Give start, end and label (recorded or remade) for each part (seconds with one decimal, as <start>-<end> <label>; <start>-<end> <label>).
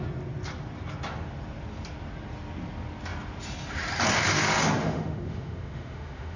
0.0-4.8 recorded; 4.8-6.4 remade